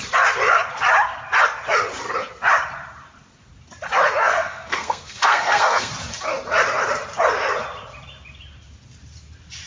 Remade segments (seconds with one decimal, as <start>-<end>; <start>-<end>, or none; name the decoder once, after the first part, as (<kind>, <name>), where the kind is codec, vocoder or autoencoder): 4.2-5.9 (codec, SNAC)